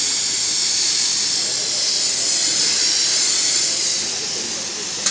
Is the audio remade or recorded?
recorded